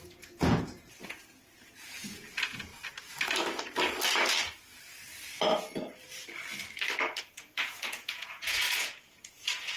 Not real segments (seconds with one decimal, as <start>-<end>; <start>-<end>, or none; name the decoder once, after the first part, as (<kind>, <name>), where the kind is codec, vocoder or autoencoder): 0.0-2.7 (vocoder, Vocos); 7.2-9.8